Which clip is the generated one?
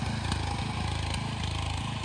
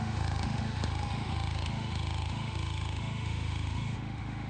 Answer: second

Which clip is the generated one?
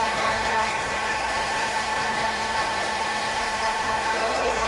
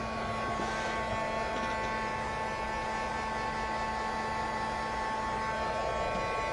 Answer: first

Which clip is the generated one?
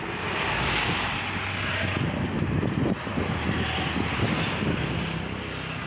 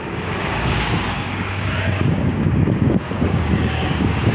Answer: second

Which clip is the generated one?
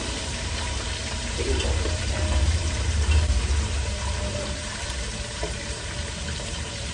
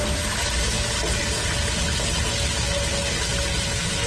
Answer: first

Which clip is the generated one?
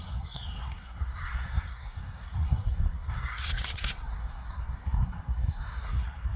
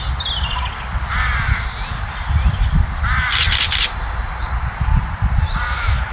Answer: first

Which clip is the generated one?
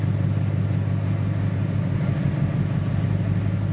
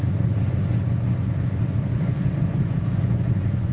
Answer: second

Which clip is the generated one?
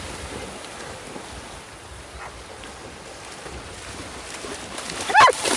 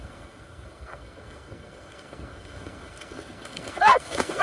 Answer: second